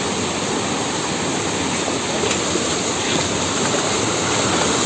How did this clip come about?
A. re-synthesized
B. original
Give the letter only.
B